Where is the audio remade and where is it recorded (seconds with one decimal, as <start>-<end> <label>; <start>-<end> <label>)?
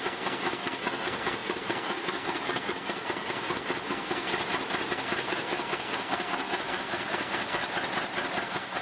0.0-4.3 remade; 4.3-4.9 recorded; 4.9-7.6 remade; 7.6-8.4 recorded; 8.4-8.8 remade